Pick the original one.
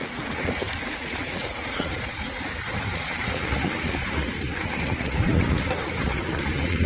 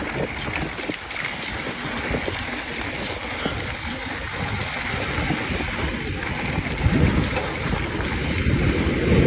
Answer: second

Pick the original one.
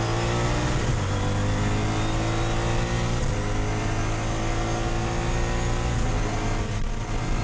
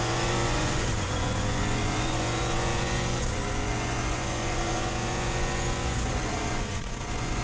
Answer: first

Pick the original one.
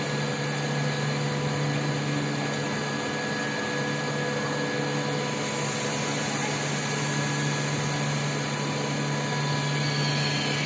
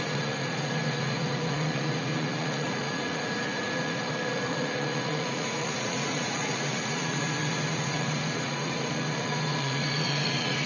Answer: first